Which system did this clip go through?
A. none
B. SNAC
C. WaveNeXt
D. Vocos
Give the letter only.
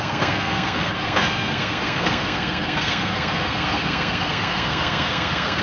B